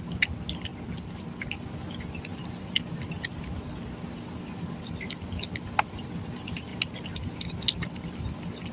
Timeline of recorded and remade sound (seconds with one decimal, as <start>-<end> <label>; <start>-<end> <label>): 0.0-8.7 recorded

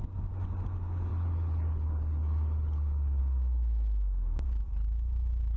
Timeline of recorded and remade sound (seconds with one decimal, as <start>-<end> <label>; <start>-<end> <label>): 0.0-1.1 recorded; 1.1-3.2 remade; 3.2-5.6 recorded